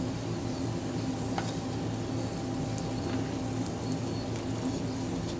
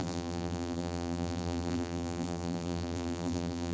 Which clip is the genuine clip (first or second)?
first